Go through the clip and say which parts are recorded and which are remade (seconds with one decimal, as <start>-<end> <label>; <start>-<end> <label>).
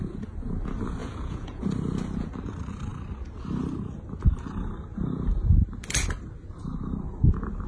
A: 0.0-1.0 recorded; 1.0-1.6 remade; 1.6-7.7 recorded